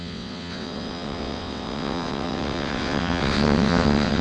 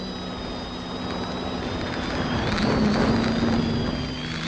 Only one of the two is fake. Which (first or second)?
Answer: first